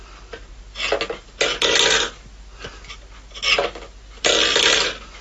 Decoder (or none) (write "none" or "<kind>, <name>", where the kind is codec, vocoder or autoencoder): none